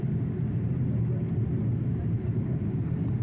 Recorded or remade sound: recorded